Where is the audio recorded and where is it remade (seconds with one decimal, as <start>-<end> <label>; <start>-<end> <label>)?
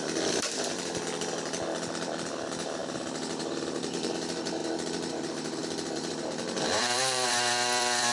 0.0-2.8 remade; 2.8-3.4 recorded; 3.4-4.6 remade; 4.6-5.1 recorded; 5.1-8.1 remade